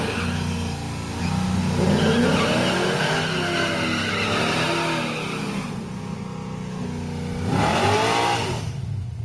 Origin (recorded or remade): recorded